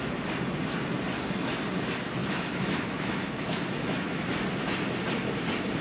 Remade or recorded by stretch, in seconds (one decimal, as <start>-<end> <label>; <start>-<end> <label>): 0.0-2.2 recorded; 2.2-4.3 remade; 4.3-5.8 recorded